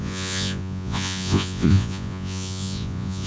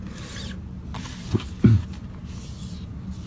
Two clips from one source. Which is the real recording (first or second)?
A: second